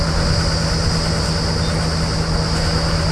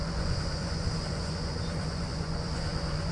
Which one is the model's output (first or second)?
second